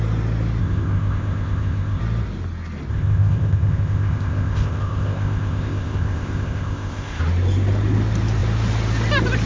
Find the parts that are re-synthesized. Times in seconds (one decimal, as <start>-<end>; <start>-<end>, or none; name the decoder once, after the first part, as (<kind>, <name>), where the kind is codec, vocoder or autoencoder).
0.6-2.0 (codec, ZipCodec); 2.9-7.2